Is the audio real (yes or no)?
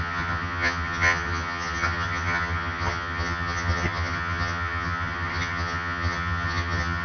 no